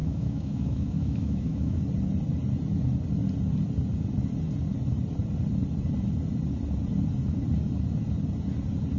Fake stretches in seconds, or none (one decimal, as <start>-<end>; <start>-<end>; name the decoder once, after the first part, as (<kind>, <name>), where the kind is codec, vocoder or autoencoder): 0.0-1.8 (autoencoder, DAC-VAE)